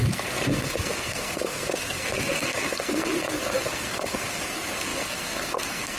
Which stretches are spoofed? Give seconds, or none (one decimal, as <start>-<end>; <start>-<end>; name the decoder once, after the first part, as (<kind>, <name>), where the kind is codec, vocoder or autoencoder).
0.0-6.0 (codec, SNAC)